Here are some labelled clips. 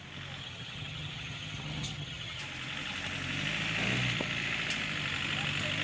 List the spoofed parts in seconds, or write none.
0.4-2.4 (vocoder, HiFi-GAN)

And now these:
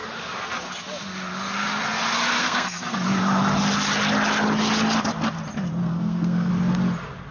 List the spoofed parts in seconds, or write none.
2.4-2.9 (codec, SNAC); 5.8-6.5

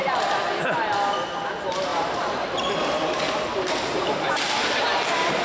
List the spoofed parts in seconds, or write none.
1.9-2.7 (vocoder, BigVGAN v2); 3.5-5.0

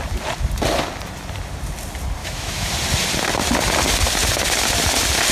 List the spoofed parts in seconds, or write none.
2.2-2.7 (autoencoder, DAC-VAE)